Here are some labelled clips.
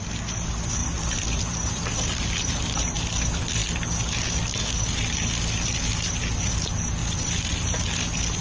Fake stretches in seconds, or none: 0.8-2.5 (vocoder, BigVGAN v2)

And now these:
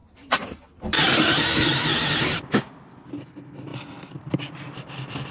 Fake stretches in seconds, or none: 0.0-3.2 (vocoder, BigVGAN v2); 3.7-5.3